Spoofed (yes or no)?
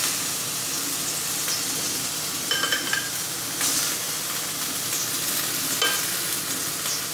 no